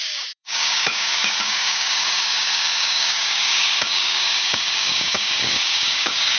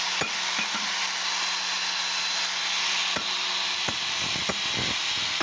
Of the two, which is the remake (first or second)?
first